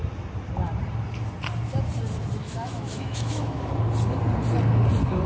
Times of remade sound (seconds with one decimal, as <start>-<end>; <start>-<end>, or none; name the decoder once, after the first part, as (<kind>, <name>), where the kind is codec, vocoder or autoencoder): 2.4-3.7 (autoencoder, DAC-VAE)